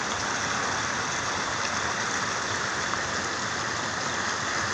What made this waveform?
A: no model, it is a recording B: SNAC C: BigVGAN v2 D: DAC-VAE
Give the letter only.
A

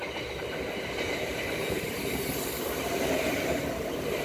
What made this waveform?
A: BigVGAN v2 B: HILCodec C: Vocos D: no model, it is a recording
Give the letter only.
A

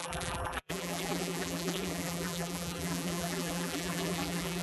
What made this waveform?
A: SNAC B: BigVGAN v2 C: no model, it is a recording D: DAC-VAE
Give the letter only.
B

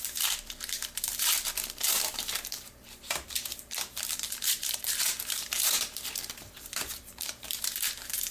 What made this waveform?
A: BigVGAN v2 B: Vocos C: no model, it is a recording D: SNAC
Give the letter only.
A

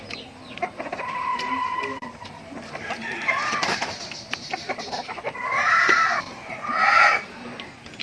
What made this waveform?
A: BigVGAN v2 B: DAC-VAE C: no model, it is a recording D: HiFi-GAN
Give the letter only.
A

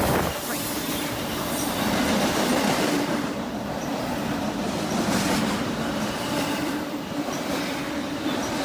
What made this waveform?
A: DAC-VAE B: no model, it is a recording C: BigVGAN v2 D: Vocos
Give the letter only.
C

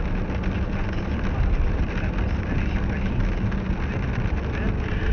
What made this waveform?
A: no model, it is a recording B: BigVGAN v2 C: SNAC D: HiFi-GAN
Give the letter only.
A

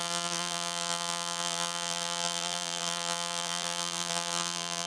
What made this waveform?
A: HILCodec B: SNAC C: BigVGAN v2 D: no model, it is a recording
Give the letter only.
C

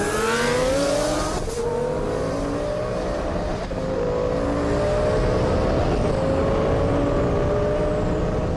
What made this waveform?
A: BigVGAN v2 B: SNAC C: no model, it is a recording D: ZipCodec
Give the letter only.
C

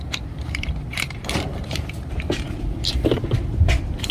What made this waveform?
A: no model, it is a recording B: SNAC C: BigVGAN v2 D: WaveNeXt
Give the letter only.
C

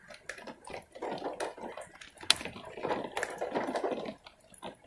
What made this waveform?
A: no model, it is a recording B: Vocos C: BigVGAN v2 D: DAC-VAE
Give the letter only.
A